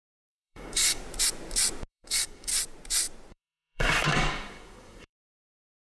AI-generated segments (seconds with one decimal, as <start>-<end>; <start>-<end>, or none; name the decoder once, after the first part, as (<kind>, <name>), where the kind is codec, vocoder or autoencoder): 0.0-1.0 (codec, DAC); 1.9-2.5; 3.3-5.9